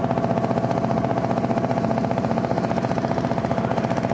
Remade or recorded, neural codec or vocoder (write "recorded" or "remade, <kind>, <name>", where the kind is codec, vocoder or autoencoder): recorded